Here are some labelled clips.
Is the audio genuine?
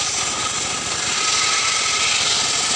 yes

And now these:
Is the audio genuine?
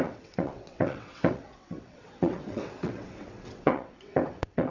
no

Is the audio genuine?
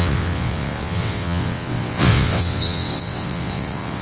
no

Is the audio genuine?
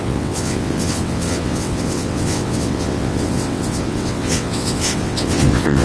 no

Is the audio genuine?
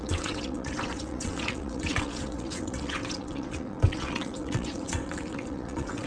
no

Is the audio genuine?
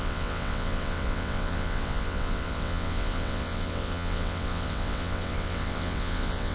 no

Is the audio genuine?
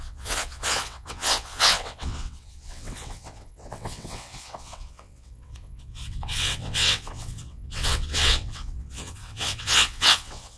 no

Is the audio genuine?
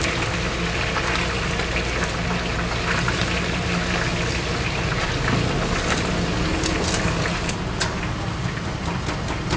yes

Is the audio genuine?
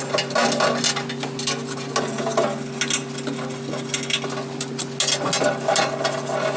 yes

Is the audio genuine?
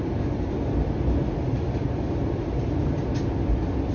yes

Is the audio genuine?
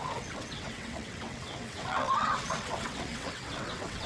no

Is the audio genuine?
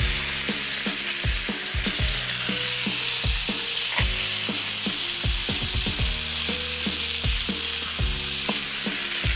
yes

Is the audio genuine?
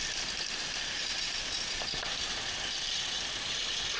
yes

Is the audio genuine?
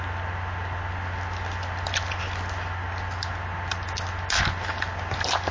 yes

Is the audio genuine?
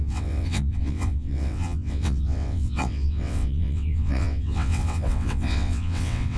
no